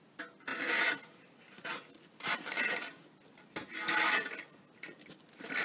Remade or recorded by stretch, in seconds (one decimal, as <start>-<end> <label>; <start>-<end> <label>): 0.0-5.6 recorded